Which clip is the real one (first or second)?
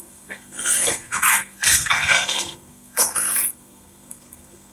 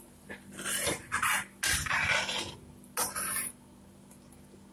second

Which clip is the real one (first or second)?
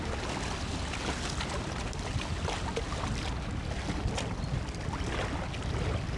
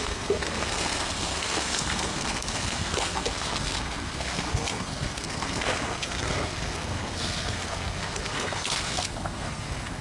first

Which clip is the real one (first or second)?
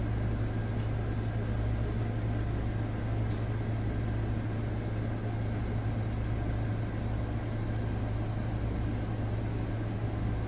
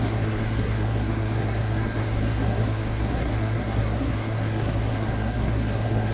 first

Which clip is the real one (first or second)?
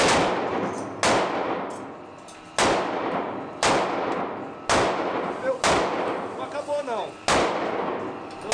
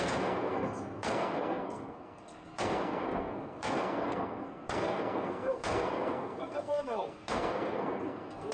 first